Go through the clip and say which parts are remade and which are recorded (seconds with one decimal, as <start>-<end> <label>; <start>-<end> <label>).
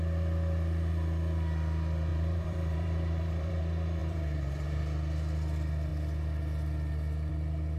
0.0-2.1 recorded; 2.1-3.6 remade; 3.6-4.0 recorded; 4.0-4.8 remade; 4.8-7.8 recorded